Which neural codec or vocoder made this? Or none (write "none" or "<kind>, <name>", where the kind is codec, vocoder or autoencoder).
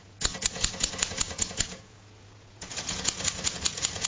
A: vocoder, Vocos